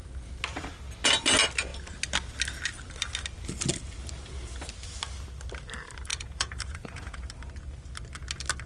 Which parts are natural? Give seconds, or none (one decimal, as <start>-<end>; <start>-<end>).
0.0-6.1; 7.3-8.7